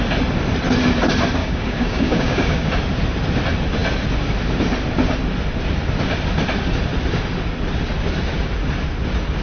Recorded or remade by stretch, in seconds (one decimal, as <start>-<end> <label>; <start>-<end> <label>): 0.0-1.4 recorded; 1.4-2.7 remade; 2.7-9.4 recorded